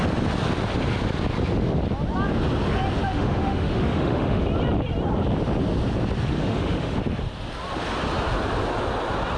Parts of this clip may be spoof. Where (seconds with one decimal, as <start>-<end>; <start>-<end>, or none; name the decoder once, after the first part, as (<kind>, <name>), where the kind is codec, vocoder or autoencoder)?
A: 3.1-4.4 (autoencoder, DAC-VAE); 6.4-7.0